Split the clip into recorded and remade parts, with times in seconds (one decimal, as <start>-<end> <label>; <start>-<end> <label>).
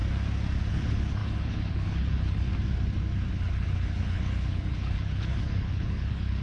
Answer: 0.0-0.7 recorded; 0.7-2.5 remade; 2.5-3.3 recorded; 3.3-6.4 remade